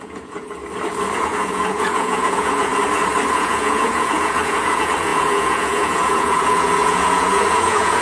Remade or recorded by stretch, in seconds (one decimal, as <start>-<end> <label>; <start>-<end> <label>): 0.0-0.6 remade; 0.6-1.2 recorded; 1.2-2.7 remade; 2.7-3.3 recorded; 3.3-8.0 remade